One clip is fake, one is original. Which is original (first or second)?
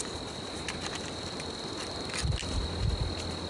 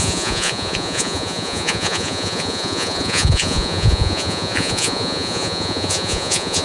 first